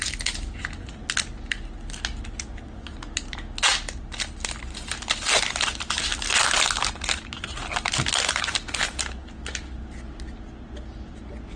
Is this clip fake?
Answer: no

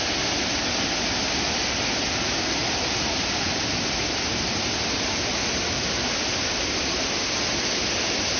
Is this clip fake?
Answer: no